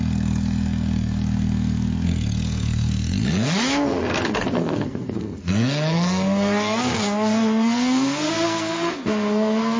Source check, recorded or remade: remade